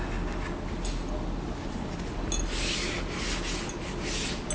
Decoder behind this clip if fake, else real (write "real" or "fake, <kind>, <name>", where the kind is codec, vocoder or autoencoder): real